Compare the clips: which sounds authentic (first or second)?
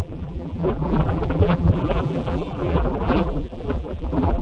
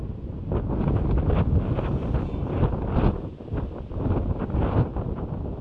second